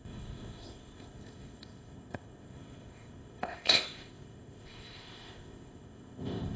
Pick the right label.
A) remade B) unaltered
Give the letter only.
A